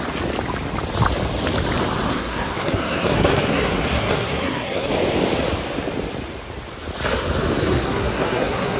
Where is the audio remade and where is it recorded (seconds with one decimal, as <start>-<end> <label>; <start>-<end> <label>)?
0.0-2.1 recorded; 2.1-4.9 remade; 4.9-7.6 recorded; 7.6-8.8 remade